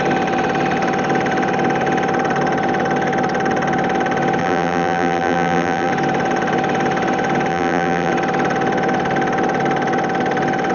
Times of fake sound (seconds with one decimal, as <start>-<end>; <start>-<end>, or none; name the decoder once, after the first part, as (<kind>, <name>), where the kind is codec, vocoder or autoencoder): 4.4-5.9 (vocoder, BigVGAN v2); 7.5-8.1